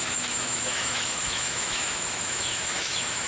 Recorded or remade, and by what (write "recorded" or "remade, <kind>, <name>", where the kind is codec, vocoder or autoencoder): remade, autoencoder, DAC-VAE